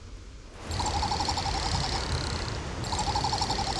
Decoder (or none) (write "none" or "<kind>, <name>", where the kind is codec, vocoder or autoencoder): none